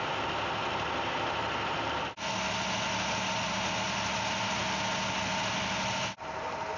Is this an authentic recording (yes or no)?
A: yes